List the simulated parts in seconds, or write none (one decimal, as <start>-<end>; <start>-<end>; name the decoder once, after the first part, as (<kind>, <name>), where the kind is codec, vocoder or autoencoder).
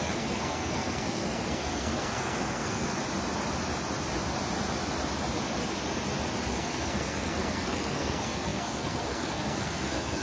0.0-3.0 (codec, SNAC); 6.5-10.2